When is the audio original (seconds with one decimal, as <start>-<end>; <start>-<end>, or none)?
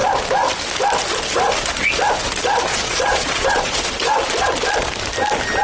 0.0-2.7; 4.0-5.6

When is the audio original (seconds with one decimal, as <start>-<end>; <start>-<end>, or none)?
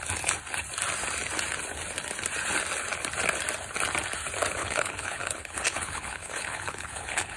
0.0-4.6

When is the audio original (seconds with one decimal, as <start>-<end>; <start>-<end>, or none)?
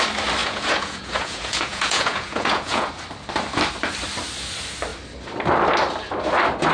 0.0-0.4; 2.9-6.7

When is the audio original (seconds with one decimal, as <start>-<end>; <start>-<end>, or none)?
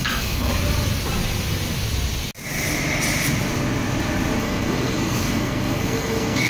0.5-4.4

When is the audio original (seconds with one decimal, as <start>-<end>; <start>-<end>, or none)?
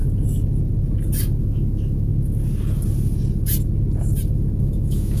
0.0-1.4; 2.1-4.6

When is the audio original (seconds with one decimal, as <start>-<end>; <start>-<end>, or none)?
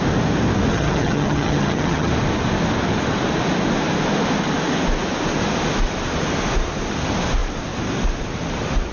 0.0-0.7; 2.1-8.9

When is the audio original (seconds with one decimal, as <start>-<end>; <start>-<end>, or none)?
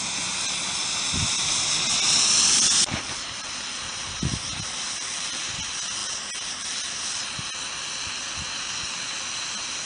0.0-9.9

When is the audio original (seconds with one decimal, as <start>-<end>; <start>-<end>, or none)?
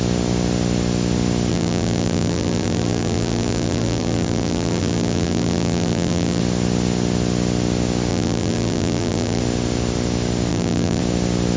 0.0-1.5; 6.4-8.1; 9.4-10.5; 11.0-11.6